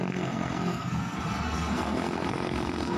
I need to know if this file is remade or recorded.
remade